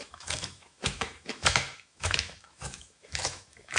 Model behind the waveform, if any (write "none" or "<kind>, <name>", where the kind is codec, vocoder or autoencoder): autoencoder, DAC-VAE